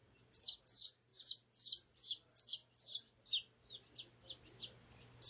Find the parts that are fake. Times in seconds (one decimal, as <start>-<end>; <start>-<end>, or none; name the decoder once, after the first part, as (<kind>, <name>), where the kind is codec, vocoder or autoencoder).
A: 0.0-0.6 (vocoder, BigVGAN v2)